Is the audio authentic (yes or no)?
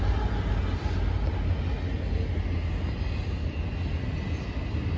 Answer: yes